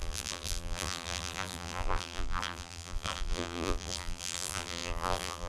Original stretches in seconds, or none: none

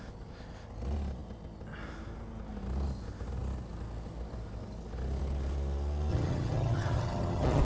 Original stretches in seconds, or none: 0.0-6.1